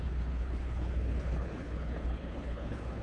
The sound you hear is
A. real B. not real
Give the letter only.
B